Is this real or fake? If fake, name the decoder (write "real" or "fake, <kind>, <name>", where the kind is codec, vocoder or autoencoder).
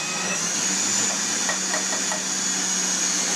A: real